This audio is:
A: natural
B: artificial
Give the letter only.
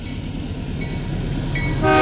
A